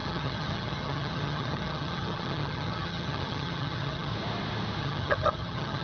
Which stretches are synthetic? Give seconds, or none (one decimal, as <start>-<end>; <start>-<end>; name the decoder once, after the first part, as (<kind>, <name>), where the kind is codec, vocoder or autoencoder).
0.0-4.1 (vocoder, HiFi-GAN); 4.8-5.8